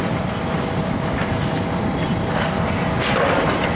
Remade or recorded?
recorded